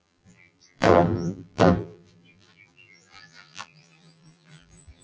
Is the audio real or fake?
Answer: fake